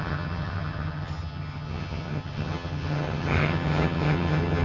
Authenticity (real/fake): fake